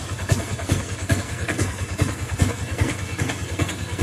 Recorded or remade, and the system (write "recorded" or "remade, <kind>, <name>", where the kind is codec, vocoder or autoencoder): remade, codec, SNAC